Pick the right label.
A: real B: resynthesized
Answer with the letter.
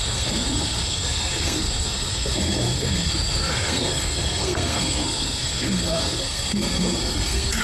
B